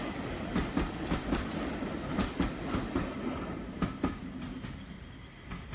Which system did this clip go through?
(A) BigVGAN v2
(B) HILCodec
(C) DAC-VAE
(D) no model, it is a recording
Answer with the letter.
D